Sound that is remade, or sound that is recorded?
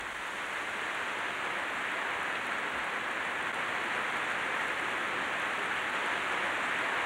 recorded